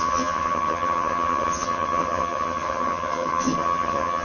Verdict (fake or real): fake